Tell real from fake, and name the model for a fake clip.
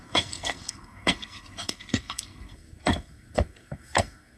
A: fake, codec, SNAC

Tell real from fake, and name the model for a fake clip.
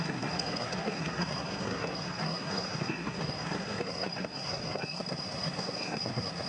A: fake, codec, SNAC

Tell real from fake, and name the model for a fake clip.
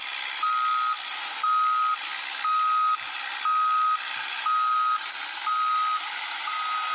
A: real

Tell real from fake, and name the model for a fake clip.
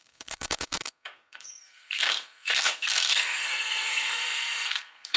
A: fake, codec, SNAC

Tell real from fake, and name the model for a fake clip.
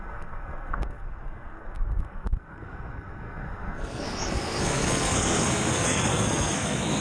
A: fake, codec, SNAC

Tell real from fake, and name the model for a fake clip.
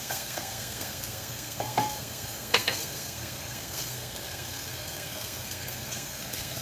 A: fake, codec, SNAC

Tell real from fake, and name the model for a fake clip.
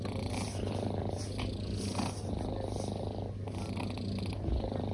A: real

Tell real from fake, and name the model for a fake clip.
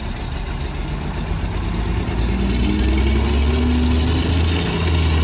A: real